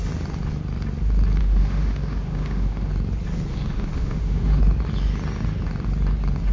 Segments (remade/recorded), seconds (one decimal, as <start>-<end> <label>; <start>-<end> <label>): 0.0-1.4 recorded; 1.4-2.9 remade; 2.9-3.5 recorded; 3.5-4.6 remade; 4.6-6.5 recorded